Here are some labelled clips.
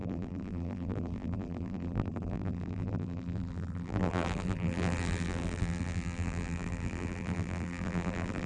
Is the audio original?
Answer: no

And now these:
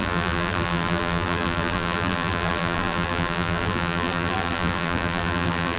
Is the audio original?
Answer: no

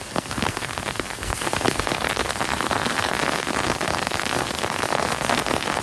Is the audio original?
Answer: no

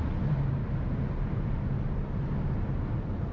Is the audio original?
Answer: yes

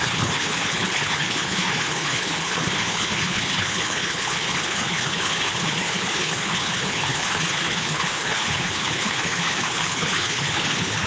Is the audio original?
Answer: no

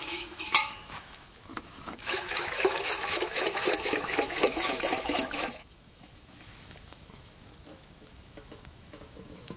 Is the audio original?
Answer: no